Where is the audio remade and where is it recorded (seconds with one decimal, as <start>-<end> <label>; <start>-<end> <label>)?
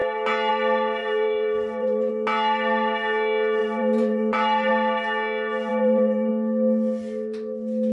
0.0-1.0 recorded; 1.0-2.1 remade; 2.1-3.6 recorded; 3.6-4.7 remade; 4.7-5.7 recorded; 5.7-6.3 remade; 6.3-7.9 recorded